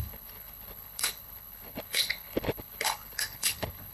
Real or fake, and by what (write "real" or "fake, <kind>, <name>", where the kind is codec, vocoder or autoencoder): fake, codec, HILCodec